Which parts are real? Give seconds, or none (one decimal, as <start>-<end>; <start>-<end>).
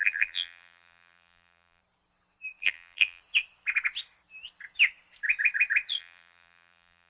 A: 1.8-2.6; 3.2-6.0